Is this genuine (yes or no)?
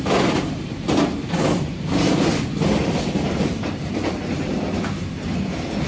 yes